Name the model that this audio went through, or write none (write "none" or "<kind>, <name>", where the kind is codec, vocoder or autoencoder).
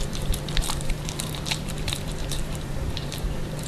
vocoder, BigVGAN v2